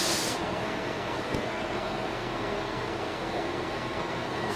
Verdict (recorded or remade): remade